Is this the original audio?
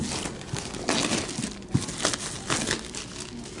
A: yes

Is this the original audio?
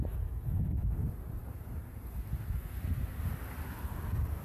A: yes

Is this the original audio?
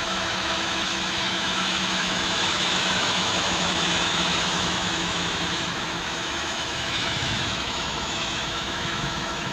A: no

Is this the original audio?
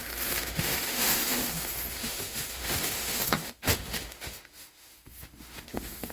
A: no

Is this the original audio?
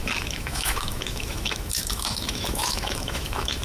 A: no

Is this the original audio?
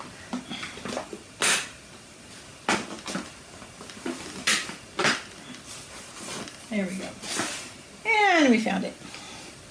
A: yes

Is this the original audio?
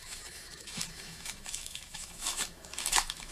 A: no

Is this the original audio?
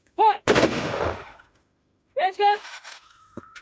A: no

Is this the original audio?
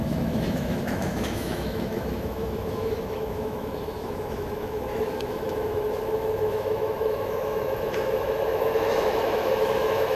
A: no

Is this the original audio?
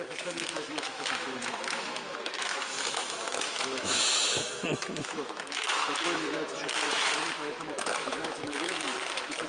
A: no